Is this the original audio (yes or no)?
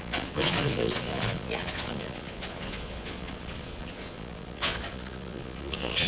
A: no